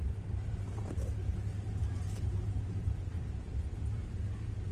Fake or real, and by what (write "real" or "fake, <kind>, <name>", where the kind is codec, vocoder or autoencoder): fake, vocoder, BigVGAN v2